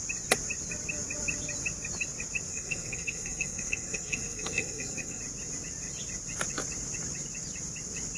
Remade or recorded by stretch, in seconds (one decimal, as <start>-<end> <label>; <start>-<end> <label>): 0.0-2.5 recorded; 2.5-5.2 remade; 5.2-8.2 recorded